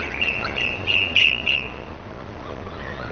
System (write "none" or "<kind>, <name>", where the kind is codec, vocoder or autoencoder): vocoder, Vocos